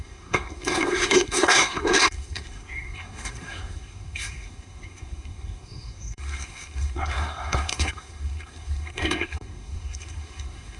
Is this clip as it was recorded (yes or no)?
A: no